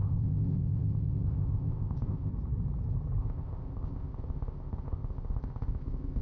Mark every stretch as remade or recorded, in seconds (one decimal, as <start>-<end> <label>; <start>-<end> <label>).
0.0-2.3 remade; 2.3-3.2 recorded; 3.2-6.2 remade